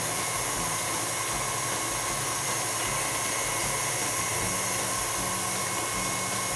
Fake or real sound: real